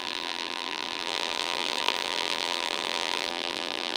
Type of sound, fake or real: fake